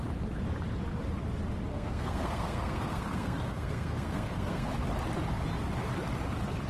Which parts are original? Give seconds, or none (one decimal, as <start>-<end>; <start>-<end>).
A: 0.0-1.7; 4.7-6.7